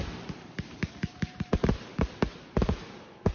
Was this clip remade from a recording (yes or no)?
yes